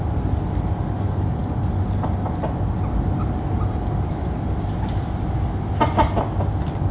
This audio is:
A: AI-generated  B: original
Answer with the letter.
B